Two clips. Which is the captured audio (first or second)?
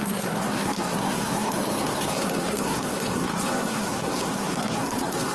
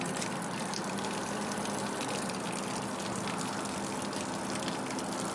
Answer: second